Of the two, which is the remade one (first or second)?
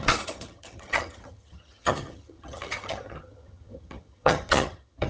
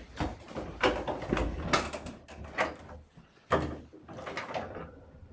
first